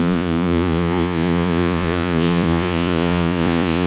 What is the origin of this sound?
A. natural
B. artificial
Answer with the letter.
B